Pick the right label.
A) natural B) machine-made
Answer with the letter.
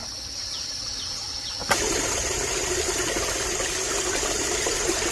A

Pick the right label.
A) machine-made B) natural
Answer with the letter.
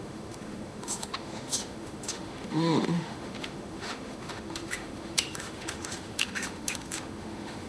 A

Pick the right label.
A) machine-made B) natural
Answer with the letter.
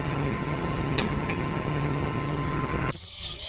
A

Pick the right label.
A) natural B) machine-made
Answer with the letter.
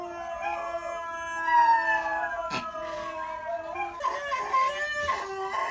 A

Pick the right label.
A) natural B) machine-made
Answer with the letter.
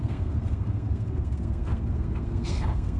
B